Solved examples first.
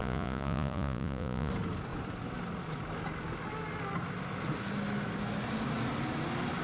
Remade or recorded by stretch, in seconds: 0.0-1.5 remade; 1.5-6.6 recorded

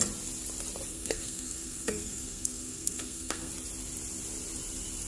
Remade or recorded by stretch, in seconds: 0.0-0.9 recorded; 0.9-3.5 remade; 3.5-5.1 recorded

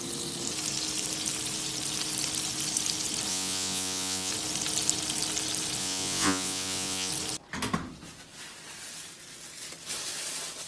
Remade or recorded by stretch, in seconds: 0.0-3.3 recorded; 3.3-4.3 remade; 4.3-5.8 recorded; 5.8-7.1 remade; 7.1-10.7 recorded

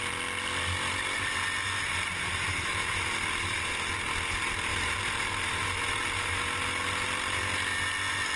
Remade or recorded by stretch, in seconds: 0.0-4.7 recorded; 4.7-6.4 remade; 6.4-8.4 recorded

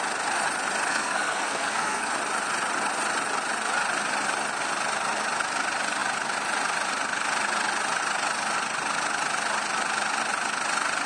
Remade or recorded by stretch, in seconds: 0.0-0.9 recorded; 0.9-2.1 remade; 2.1-11.1 recorded

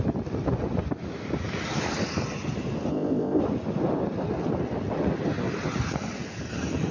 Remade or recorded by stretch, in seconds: 0.0-2.9 recorded; 2.9-3.4 remade; 3.4-6.9 recorded

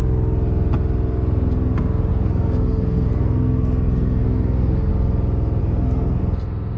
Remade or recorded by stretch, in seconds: 0.0-2.1 recorded; 2.1-4.9 remade; 4.9-5.6 recorded; 5.6-6.2 remade; 6.2-6.8 recorded

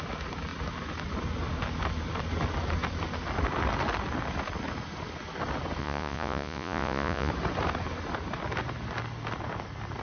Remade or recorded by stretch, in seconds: 0.0-5.8 recorded; 5.8-7.3 remade; 7.3-10.0 recorded